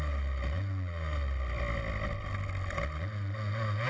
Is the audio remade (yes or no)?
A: no